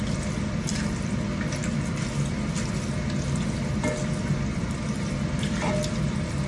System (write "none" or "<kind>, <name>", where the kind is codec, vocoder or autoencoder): none